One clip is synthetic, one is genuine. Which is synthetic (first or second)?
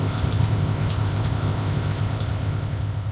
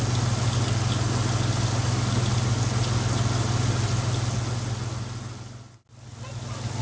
first